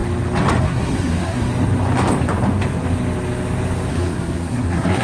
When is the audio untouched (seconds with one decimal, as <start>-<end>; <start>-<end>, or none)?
0.0-0.6; 1.5-3.9